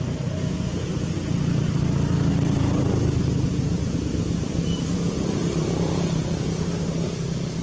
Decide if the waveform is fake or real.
fake